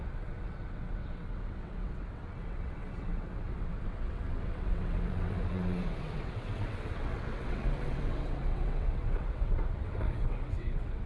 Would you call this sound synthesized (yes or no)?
yes